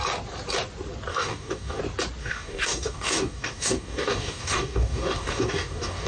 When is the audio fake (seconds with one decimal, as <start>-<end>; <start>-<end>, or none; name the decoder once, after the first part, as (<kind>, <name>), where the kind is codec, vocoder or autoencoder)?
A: 1.1-1.8 (codec, DAC); 2.2-6.1